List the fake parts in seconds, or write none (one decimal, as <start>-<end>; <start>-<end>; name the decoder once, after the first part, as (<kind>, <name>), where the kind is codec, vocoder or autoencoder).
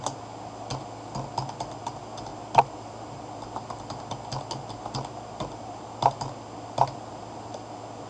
none